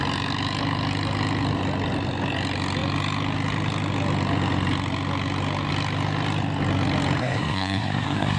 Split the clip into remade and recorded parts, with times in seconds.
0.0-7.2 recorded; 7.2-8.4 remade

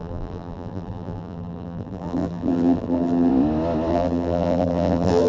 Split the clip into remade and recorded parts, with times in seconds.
0.0-3.3 remade; 3.3-3.9 recorded; 3.9-5.3 remade

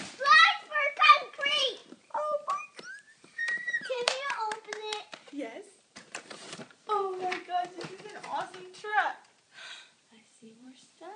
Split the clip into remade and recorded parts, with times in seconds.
0.0-8.9 remade; 8.9-9.4 recorded; 9.4-11.2 remade

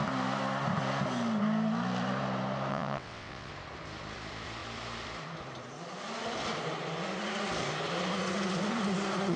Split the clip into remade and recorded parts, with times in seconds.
0.0-2.7 recorded; 2.7-3.5 remade; 3.5-9.4 recorded

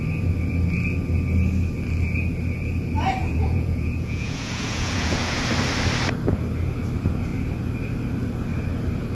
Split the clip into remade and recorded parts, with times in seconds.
0.0-3.2 recorded; 3.2-5.4 remade; 5.4-9.1 recorded

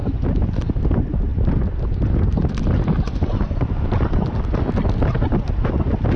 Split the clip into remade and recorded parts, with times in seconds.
0.0-6.2 recorded

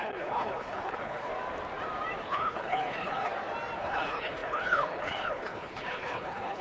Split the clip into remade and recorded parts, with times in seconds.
0.0-1.3 remade; 1.3-2.2 recorded; 2.2-3.3 remade; 3.3-3.8 recorded; 3.8-6.6 remade